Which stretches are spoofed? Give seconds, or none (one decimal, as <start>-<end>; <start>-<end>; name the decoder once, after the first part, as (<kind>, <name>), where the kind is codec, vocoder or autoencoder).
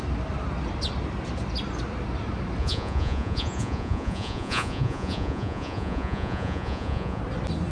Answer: 2.6-7.2 (vocoder, Vocos)